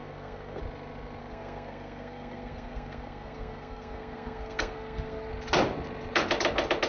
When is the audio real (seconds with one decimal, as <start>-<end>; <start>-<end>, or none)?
0.6-1.2; 5.3-6.9